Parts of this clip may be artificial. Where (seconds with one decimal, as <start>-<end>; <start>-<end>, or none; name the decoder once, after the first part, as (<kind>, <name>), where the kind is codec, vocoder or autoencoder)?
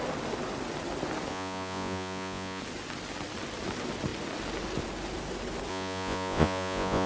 1.3-2.6 (vocoder, Vocos); 5.7-7.1